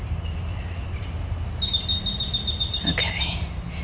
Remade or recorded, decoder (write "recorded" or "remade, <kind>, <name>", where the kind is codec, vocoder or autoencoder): recorded